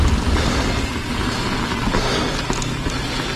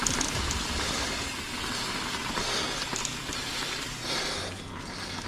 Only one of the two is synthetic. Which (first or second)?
second